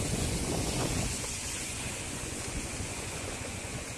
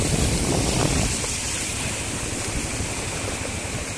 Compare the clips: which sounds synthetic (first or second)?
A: first